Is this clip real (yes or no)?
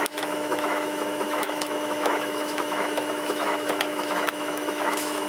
no